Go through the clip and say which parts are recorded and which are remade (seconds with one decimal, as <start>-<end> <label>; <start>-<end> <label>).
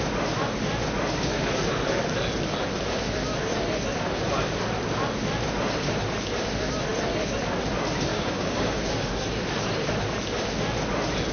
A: 0.0-8.1 recorded; 8.1-8.9 remade; 8.9-11.3 recorded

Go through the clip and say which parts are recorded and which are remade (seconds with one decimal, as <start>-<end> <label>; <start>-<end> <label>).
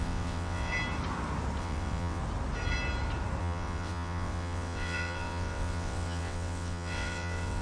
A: 0.0-0.7 remade; 0.7-1.6 recorded; 1.6-2.2 remade; 2.2-3.4 recorded; 3.4-7.6 remade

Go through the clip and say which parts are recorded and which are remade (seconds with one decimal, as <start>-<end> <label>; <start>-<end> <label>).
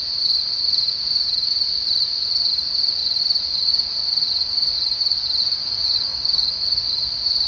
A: 0.0-5.6 recorded; 5.6-6.5 remade; 6.5-7.5 recorded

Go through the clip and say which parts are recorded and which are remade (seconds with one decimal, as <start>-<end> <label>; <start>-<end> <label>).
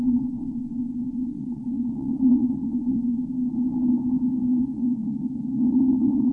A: 0.0-3.2 remade; 3.2-4.6 recorded; 4.6-6.3 remade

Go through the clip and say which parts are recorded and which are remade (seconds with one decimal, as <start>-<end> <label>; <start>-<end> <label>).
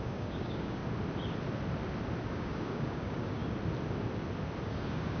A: 0.0-0.8 remade; 0.8-2.3 recorded; 2.3-3.4 remade; 3.4-4.6 recorded; 4.6-5.2 remade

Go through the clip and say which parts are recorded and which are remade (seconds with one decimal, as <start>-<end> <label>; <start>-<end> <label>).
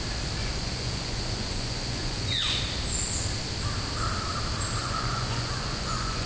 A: 0.0-0.4 recorded; 0.4-2.6 remade; 2.6-4.8 recorded; 4.8-6.3 remade